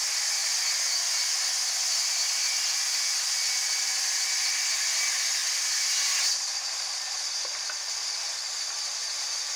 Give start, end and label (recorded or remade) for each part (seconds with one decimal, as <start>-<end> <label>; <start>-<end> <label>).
0.0-9.6 recorded